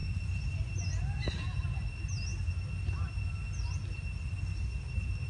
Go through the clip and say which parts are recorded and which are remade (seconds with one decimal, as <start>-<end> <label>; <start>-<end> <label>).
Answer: 0.0-5.3 recorded